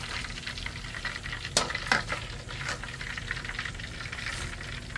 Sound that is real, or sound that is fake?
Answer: real